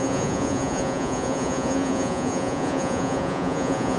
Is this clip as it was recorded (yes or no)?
no